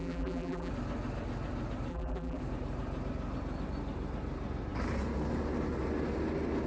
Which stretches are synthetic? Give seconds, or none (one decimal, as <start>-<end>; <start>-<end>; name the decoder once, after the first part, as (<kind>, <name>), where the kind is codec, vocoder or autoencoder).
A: 0.0-0.7 (vocoder, BigVGAN v2); 1.9-2.4